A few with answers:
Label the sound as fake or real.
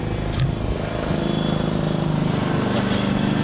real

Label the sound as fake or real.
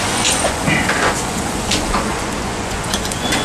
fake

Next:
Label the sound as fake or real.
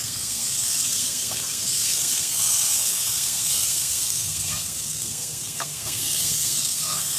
fake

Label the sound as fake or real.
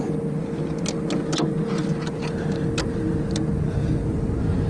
real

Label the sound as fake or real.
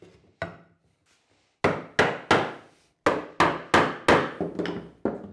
real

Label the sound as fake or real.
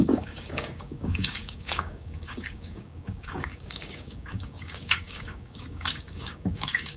fake